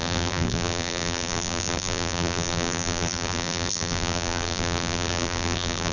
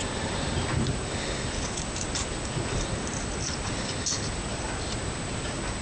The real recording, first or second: second